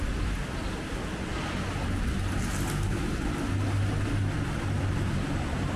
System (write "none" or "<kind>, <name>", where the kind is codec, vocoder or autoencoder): none